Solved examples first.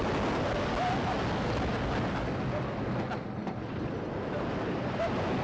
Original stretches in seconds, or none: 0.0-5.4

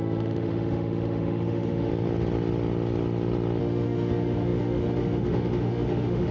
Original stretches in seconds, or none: 1.9-3.6

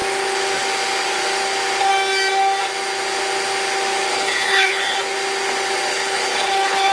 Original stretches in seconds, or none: 0.0-4.1; 5.0-5.9

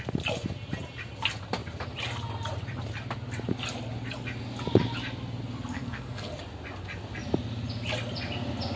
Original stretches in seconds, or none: 0.0-5.7; 6.3-8.8

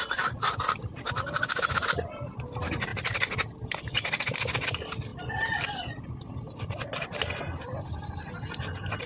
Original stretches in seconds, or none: 0.0-9.1

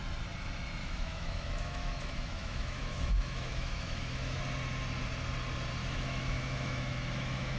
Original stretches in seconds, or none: 0.0-0.8; 4.4-5.8

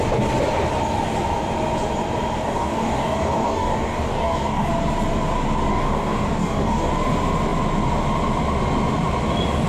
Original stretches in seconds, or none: 0.0-2.4; 4.7-5.7; 6.9-9.7